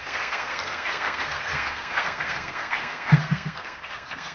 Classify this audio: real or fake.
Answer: fake